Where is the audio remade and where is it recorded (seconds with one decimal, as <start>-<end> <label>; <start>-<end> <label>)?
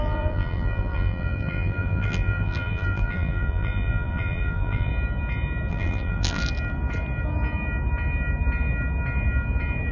0.0-4.9 remade; 4.9-5.7 recorded; 5.7-6.4 remade; 6.4-9.9 recorded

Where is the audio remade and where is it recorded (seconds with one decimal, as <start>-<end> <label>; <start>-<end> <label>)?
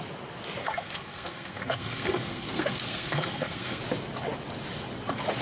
0.0-0.6 recorded; 0.6-3.8 remade; 3.8-5.4 recorded